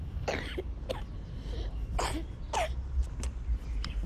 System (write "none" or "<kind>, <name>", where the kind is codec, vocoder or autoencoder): none